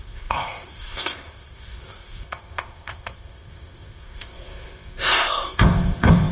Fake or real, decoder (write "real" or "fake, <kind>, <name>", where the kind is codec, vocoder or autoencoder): fake, codec, ZipCodec